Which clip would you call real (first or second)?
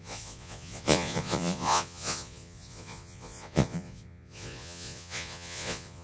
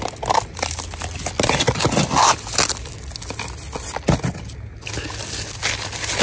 second